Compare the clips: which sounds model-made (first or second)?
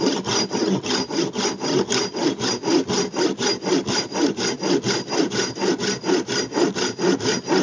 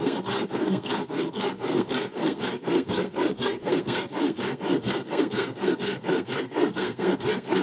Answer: second